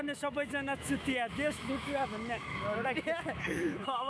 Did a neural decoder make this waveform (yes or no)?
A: yes